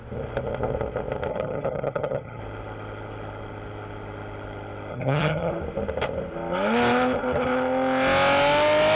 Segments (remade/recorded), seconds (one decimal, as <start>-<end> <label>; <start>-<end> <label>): 0.0-1.3 recorded; 1.3-2.4 remade; 2.4-4.9 recorded; 4.9-5.5 remade; 5.5-9.0 recorded